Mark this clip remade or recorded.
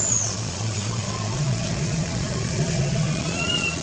remade